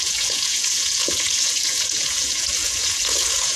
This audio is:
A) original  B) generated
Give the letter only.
B